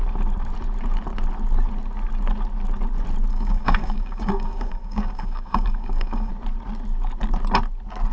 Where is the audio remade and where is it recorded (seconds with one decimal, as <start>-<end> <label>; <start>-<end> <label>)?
0.0-3.3 recorded; 3.3-6.3 remade; 6.3-8.1 recorded